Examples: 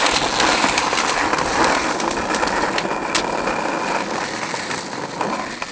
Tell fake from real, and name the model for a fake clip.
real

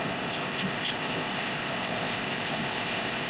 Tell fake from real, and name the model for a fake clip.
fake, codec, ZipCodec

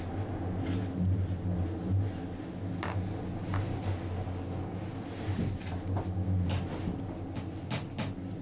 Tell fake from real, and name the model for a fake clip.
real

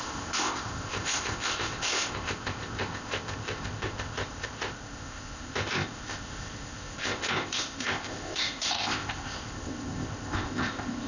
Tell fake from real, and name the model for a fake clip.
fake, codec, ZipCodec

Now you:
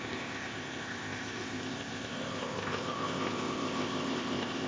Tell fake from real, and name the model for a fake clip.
fake, codec, ZipCodec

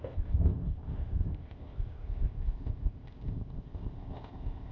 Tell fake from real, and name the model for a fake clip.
fake, codec, ZipCodec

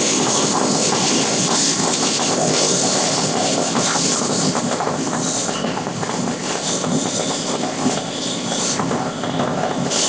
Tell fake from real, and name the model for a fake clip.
fake, codec, ZipCodec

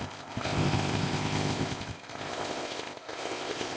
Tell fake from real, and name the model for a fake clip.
fake, codec, ZipCodec